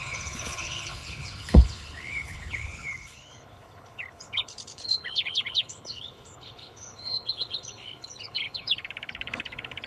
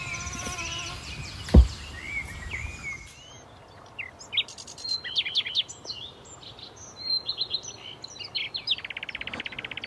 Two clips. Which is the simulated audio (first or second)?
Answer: first